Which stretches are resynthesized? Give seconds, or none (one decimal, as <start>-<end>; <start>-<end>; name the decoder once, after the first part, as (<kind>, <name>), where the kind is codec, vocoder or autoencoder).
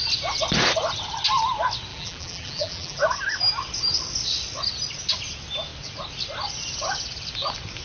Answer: 1.9-3.0 (vocoder, BigVGAN v2)